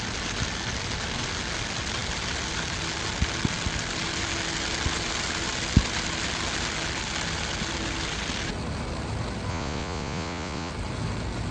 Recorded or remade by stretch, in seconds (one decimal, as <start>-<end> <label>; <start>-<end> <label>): 0.0-9.5 recorded; 9.5-10.7 remade; 10.7-11.5 recorded